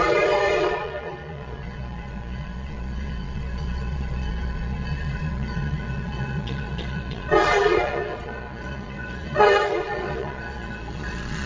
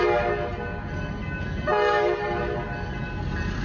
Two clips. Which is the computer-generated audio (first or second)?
first